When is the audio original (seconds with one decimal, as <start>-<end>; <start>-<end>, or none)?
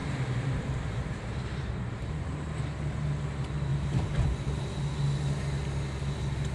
2.6-3.7; 4.8-6.5